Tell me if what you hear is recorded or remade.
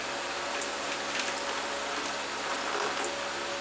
recorded